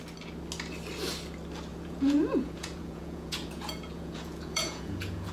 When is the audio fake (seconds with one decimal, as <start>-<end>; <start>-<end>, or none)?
1.7-5.3